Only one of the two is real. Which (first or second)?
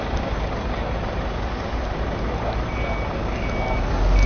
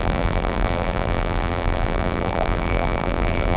first